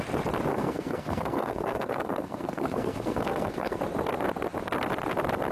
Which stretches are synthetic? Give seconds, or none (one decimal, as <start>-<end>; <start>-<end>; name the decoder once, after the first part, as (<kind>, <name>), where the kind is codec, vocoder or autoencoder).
0.5-3.8 (codec, SNAC)